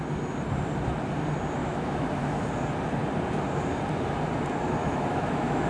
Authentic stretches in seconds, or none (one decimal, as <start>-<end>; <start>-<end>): 0.0-1.6; 2.4-4.8